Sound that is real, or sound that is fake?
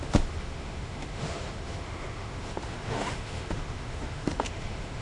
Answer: fake